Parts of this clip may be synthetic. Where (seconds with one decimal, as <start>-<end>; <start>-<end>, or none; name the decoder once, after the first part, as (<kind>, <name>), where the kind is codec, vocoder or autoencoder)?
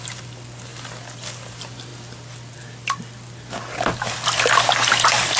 none